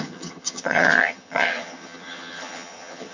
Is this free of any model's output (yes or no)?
no